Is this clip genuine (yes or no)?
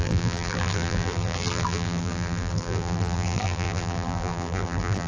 no